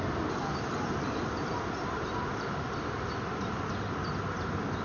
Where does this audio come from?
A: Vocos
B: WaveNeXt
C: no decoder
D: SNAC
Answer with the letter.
C